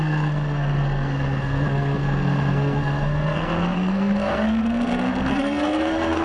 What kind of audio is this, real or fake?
fake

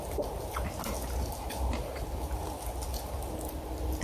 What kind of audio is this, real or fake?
real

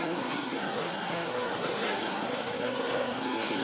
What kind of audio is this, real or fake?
fake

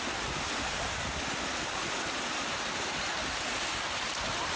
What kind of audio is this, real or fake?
real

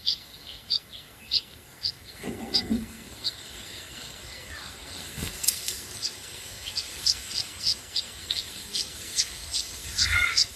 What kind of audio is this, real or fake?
fake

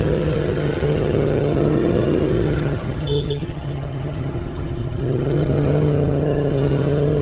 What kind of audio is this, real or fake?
fake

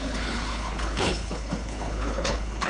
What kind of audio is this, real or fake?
fake